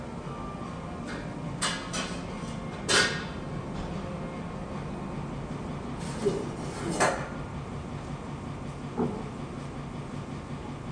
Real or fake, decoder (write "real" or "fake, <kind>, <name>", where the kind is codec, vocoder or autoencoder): real